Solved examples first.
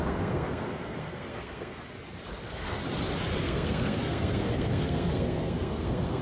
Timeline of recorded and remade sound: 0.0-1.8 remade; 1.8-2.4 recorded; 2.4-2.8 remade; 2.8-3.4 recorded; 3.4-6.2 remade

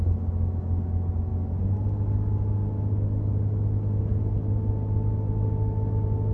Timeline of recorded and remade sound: 0.0-6.3 recorded